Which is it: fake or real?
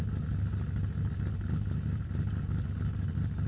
real